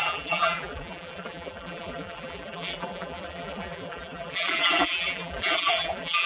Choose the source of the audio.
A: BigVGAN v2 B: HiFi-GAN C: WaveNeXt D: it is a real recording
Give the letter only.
A